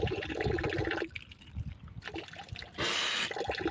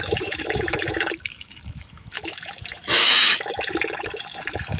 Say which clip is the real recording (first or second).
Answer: first